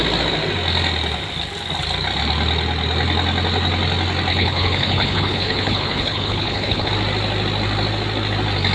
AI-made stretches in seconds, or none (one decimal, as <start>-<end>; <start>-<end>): 4.3-6.9